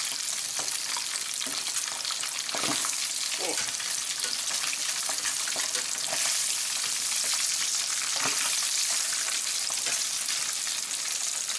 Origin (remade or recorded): recorded